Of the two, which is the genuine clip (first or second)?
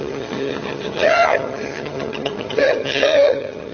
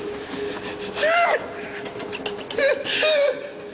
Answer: second